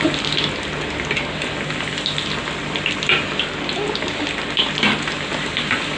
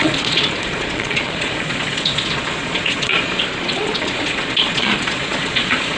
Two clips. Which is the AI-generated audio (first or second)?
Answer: second